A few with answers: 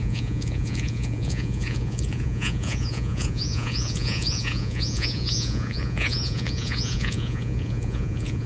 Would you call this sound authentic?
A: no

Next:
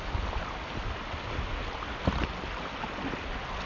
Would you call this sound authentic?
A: yes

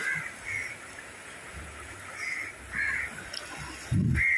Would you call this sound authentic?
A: yes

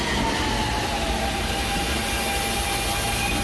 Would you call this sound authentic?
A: yes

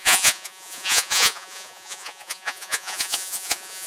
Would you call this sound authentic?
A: no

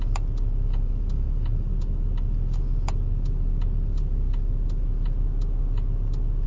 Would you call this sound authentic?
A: yes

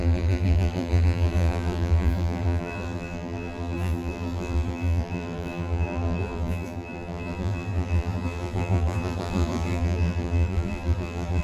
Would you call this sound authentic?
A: no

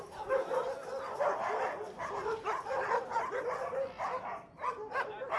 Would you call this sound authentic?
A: yes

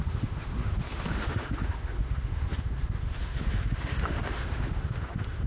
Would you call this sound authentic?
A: no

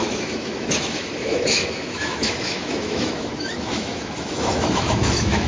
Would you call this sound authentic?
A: no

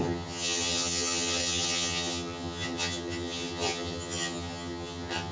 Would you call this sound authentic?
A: no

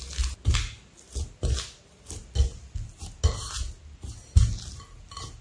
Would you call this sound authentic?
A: yes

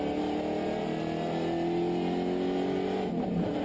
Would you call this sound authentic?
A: yes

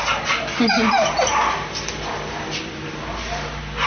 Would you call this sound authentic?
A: yes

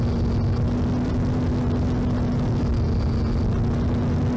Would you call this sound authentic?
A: yes